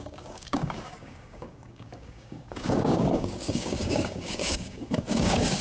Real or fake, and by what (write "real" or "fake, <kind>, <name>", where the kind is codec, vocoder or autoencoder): fake, codec, DAC